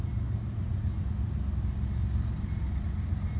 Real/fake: real